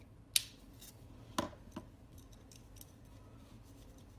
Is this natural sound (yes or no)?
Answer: yes